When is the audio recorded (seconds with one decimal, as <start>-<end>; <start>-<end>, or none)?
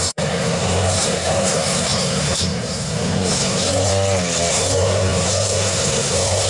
3.9-4.5